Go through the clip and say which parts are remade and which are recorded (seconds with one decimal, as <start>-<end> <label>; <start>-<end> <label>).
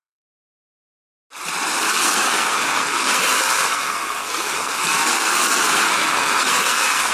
0.0-0.7 remade; 0.7-1.9 recorded; 1.9-7.1 remade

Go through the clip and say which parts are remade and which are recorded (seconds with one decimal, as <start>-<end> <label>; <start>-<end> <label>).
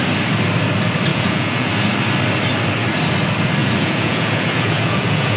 0.0-1.1 recorded; 1.1-1.7 remade; 1.7-3.6 recorded; 3.6-5.4 remade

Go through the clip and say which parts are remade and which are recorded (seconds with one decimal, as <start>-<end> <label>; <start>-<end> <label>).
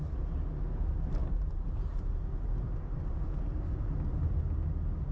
0.0-5.1 recorded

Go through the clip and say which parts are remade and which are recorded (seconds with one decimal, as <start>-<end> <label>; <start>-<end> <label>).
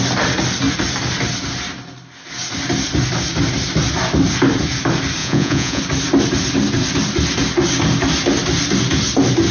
0.0-5.2 recorded; 5.2-5.8 remade; 5.8-9.5 recorded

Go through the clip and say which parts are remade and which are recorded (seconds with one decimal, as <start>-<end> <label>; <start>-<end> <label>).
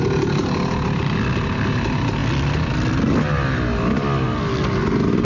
0.0-5.2 recorded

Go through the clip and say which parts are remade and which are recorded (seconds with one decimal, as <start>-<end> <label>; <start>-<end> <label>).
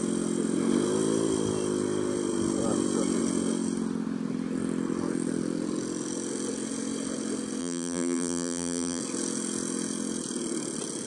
0.0-7.6 recorded; 7.6-9.0 remade; 9.0-11.1 recorded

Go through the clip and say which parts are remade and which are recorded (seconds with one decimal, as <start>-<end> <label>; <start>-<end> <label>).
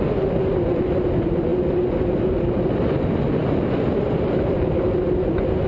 0.0-5.7 recorded